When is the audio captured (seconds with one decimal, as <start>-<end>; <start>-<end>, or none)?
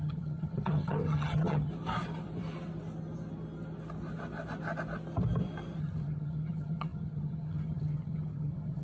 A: 1.7-5.8